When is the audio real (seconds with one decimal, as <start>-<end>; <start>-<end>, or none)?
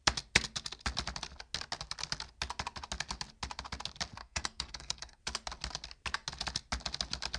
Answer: 0.0-4.2; 5.2-7.4